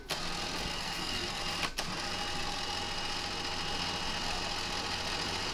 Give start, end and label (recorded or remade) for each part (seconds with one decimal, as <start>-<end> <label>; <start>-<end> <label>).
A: 0.0-0.7 recorded; 0.7-1.4 remade; 1.4-5.5 recorded